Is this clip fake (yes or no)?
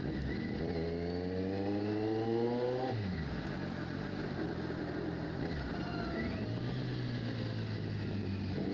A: no